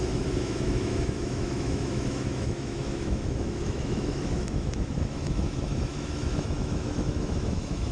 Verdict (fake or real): fake